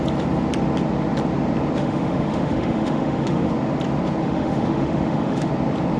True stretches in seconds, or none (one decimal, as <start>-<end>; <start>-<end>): 0.0-1.8; 3.5-4.2; 5.5-6.0